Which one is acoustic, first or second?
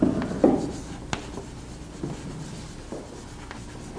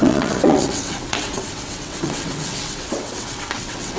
first